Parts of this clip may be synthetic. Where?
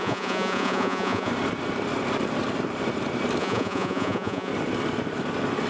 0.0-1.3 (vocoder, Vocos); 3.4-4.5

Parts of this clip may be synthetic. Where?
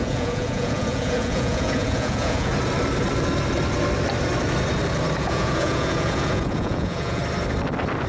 0.0-2.5 (vocoder, Vocos); 5.2-7.2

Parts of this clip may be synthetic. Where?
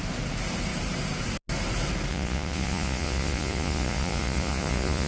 2.1-5.1 (vocoder, Vocos)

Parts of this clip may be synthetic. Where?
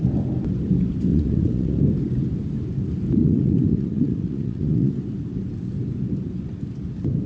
1.1-1.8 (vocoder, Vocos); 3.2-4.9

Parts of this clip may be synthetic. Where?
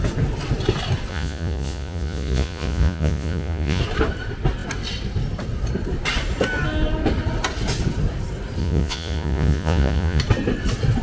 1.1-3.8 (vocoder, Vocos); 8.6-10.2